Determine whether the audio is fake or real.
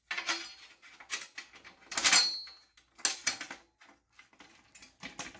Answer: real